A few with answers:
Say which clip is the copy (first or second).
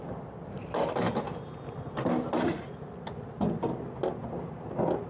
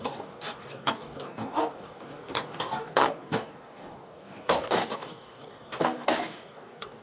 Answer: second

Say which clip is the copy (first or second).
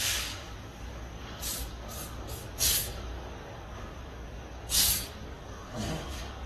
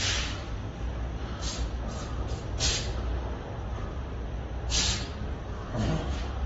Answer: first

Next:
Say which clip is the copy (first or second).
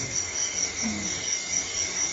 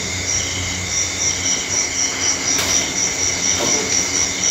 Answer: first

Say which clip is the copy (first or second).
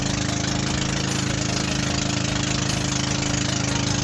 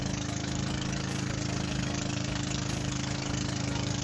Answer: second